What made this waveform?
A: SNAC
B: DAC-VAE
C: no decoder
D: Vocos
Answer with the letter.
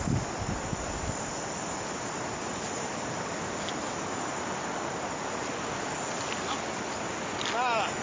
C